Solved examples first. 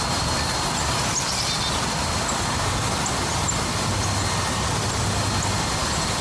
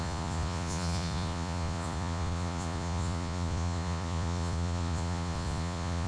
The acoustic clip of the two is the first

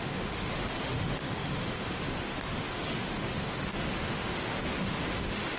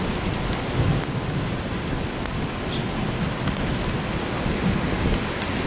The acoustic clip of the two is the second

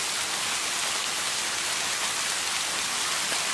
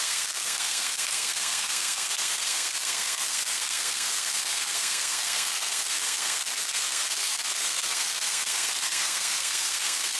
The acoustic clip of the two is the first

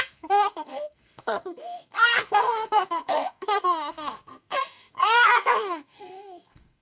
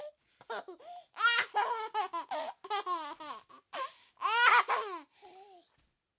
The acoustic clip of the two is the second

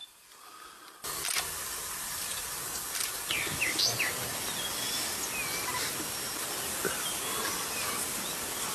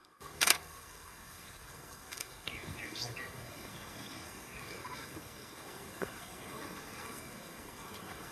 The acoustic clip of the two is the first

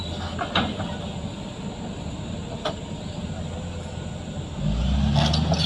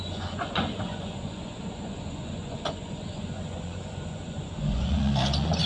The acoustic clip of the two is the first